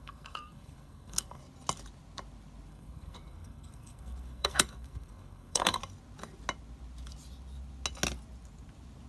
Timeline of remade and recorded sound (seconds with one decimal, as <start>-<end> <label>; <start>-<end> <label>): 0.0-1.4 remade; 1.4-2.7 recorded; 2.7-5.8 remade; 5.8-9.1 recorded